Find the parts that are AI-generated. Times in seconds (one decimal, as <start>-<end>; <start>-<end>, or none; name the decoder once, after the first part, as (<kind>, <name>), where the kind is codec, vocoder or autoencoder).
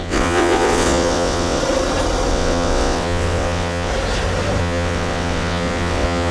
0.0-1.6 (vocoder, WaveNeXt); 2.3-3.9; 4.6-6.3